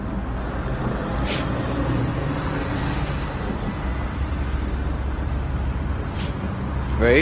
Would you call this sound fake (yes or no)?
no